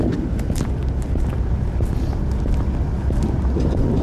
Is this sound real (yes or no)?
yes